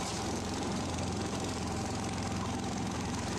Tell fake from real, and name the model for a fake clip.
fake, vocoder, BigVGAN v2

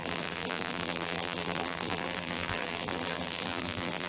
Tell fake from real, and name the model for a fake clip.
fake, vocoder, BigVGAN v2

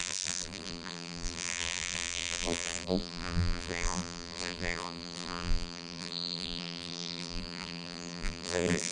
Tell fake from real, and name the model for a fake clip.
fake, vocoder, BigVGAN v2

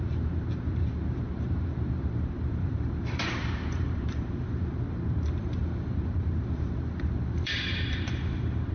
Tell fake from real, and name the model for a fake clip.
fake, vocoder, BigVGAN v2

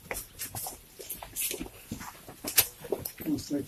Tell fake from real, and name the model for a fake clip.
real